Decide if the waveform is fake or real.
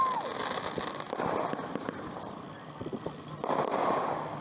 real